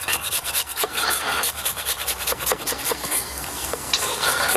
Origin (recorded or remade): remade